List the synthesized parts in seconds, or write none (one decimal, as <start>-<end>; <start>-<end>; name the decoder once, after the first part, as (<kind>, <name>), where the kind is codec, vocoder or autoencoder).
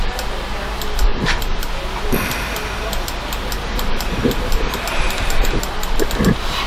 1.1-1.7 (vocoder, BigVGAN v2); 3.6-5.5